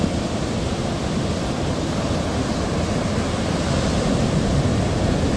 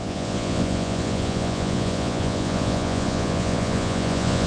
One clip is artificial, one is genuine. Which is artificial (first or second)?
second